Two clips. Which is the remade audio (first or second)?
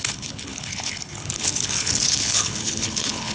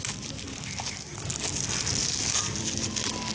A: first